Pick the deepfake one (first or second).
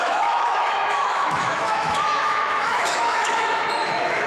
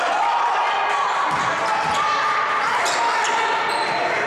first